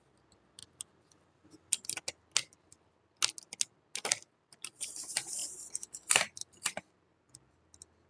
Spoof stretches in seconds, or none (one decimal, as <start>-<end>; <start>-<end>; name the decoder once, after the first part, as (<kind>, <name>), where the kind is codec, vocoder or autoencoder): none